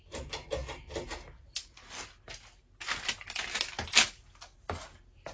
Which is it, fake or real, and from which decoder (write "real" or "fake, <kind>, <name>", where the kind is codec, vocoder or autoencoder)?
real